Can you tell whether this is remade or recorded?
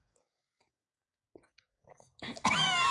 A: remade